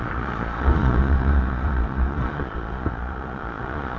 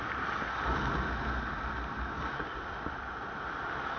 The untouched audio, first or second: second